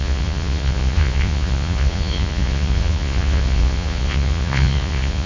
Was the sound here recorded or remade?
remade